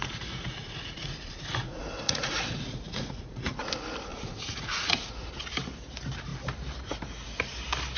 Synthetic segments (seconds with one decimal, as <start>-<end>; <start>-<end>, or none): 0.0-3.5; 4.1-5.3